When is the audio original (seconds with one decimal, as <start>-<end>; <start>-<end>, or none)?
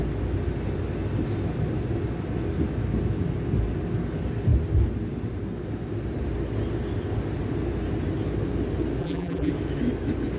0.0-9.0; 9.5-10.4